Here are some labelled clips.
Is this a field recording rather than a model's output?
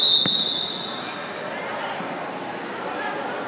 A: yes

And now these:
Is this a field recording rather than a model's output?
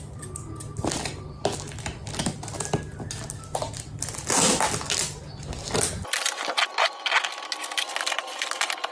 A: yes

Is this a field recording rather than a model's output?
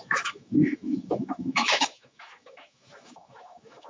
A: no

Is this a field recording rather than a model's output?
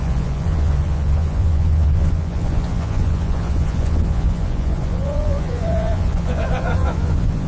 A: no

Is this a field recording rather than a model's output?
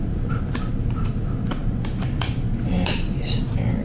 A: no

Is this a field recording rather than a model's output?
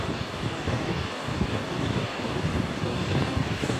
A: no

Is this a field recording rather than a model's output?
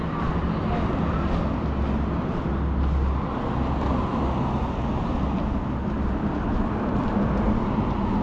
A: yes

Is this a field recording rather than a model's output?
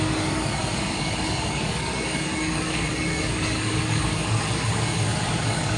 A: no